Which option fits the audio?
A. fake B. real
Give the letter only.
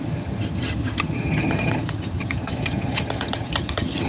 A